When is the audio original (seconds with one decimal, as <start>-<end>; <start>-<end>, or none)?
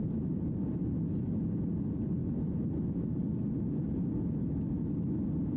0.0-5.6